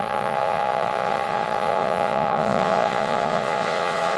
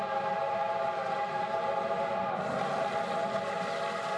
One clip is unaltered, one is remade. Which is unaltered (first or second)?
second